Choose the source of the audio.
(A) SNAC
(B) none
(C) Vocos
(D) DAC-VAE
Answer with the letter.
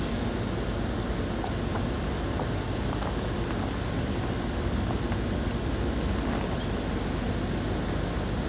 B